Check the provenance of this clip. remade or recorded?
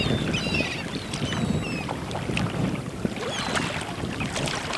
recorded